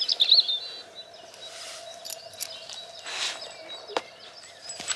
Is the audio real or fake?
real